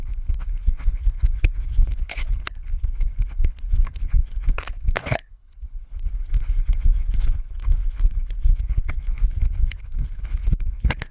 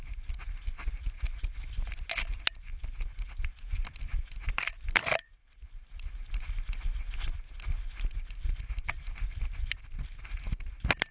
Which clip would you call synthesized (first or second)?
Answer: first